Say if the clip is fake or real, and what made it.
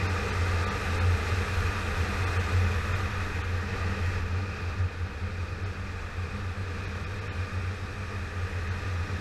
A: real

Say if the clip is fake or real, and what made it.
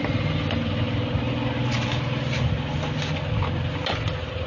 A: real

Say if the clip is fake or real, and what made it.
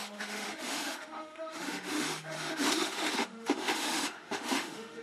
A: fake, autoencoder, DAC-VAE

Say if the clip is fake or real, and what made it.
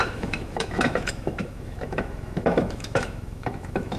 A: fake, autoencoder, DAC-VAE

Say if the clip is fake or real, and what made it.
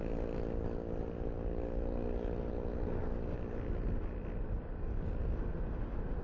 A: real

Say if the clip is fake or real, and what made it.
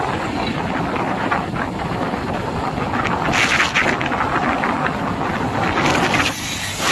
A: real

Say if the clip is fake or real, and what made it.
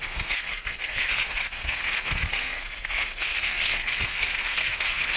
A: fake, codec, SNAC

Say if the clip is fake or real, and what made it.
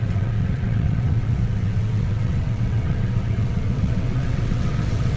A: fake, vocoder, WaveNeXt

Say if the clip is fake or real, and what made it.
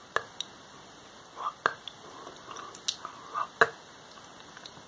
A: real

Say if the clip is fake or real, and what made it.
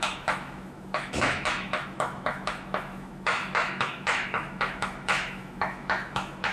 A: fake, autoencoder, DAC-VAE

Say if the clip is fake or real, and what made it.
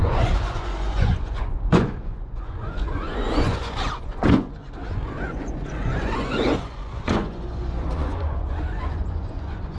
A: fake, vocoder, Vocos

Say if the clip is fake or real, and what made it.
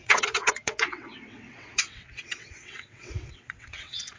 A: fake, vocoder, WaveNeXt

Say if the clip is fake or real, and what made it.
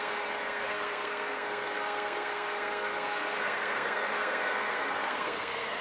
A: fake, codec, SNAC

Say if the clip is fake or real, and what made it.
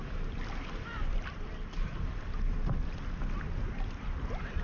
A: fake, vocoder, BigVGAN v2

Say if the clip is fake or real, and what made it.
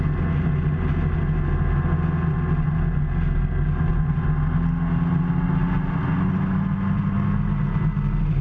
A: real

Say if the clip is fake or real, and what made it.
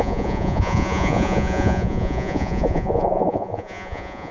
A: fake, vocoder, Vocos